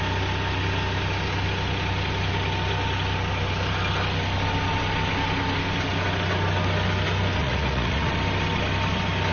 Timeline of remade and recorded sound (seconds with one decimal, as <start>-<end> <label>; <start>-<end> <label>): 0.0-7.4 recorded; 7.4-8.1 remade; 8.1-9.3 recorded